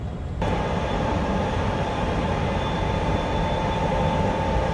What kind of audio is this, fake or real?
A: fake